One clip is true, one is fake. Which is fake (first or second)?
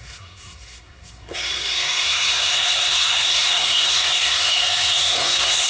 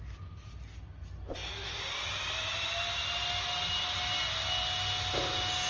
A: first